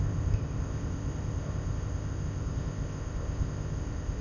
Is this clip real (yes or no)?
no